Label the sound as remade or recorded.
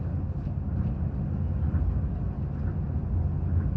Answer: recorded